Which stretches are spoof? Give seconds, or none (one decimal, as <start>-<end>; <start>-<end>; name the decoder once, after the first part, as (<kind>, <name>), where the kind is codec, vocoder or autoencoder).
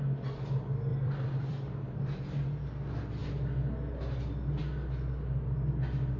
0.9-2.2 (vocoder, BigVGAN v2)